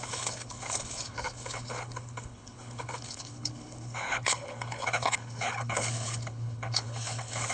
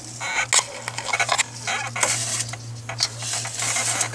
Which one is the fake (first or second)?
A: first